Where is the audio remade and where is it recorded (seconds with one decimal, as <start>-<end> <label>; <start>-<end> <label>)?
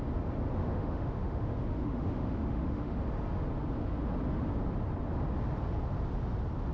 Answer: 0.0-0.6 recorded; 0.6-3.0 remade; 3.0-6.7 recorded